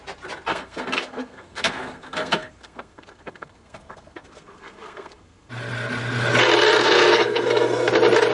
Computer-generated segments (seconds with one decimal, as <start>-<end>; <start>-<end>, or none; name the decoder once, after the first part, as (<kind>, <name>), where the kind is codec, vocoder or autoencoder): 0.5-5.5 (codec, SNAC); 6.8-7.9